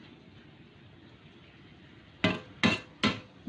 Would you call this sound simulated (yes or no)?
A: no